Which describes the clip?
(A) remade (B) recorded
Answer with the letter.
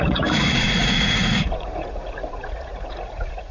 A